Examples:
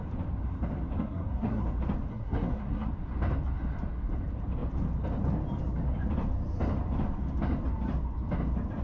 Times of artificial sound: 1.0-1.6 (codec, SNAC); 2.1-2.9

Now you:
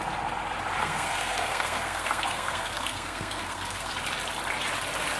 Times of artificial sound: 0.8-3.9 (codec, SNAC)

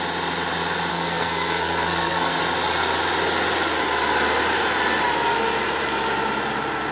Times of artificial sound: 0.9-2.4 (codec, SNAC)

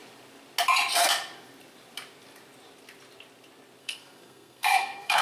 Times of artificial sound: 3.8-5.2 (codec, SNAC)

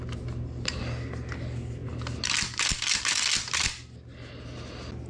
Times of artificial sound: none